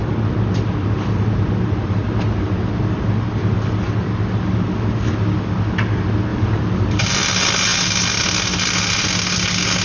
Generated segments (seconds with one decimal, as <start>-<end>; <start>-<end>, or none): 6.3-7.0